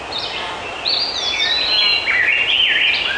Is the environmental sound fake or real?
real